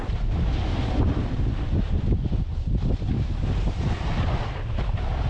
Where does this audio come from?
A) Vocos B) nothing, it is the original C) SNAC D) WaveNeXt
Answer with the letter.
B